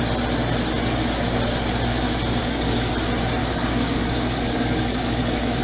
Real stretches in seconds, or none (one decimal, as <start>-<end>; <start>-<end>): 0.0-2.4; 2.9-3.4